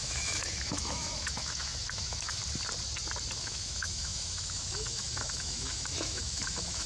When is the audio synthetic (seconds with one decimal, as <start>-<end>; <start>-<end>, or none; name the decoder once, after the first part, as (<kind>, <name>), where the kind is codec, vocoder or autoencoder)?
0.0-2.4 (autoencoder, DAC-VAE); 3.4-6.9